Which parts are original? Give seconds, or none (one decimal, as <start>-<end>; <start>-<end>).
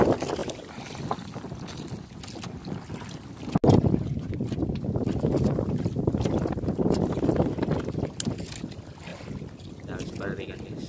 0.0-10.9